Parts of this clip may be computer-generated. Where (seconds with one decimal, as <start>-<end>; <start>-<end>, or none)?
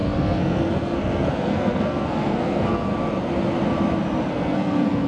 0.0-2.9; 4.3-5.1